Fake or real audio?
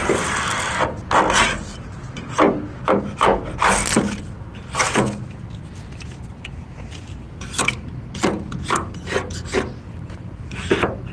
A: real